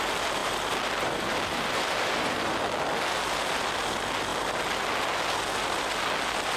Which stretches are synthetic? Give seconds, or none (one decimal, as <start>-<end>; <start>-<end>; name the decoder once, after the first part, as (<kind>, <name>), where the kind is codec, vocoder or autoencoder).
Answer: 0.4-2.6 (vocoder, BigVGAN v2)